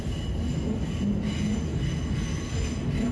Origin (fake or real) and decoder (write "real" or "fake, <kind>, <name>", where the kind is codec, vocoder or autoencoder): real